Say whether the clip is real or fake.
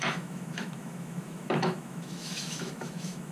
fake